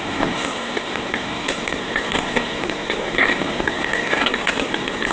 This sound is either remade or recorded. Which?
remade